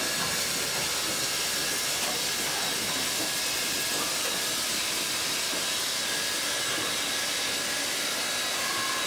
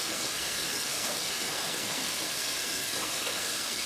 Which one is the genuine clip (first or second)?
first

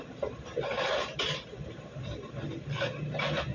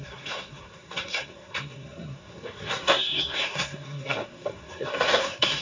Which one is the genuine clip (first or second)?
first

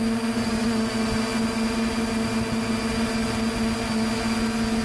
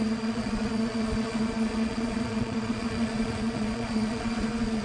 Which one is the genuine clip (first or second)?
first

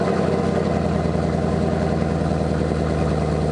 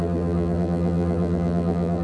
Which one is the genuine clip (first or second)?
first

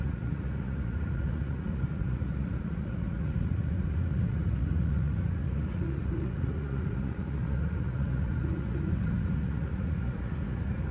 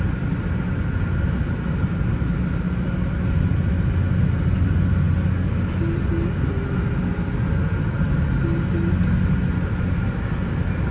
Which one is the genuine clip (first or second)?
second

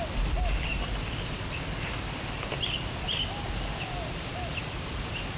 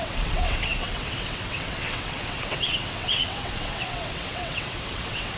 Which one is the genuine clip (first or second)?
first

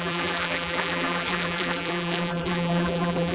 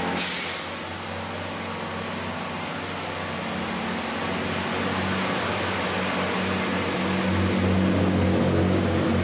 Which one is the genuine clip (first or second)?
second